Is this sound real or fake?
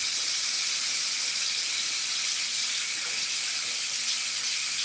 real